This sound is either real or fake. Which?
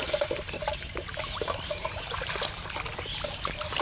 real